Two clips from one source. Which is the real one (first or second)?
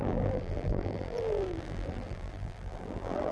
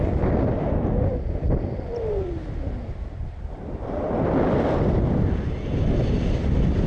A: second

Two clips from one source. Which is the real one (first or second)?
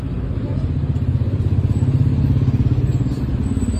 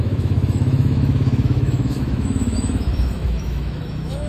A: first